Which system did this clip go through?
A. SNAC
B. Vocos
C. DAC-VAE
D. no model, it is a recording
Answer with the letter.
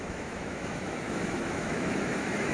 C